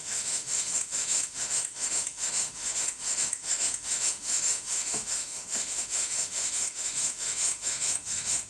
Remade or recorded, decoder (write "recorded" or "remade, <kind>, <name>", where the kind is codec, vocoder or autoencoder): remade, autoencoder, DAC-VAE